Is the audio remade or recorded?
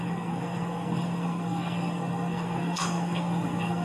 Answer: remade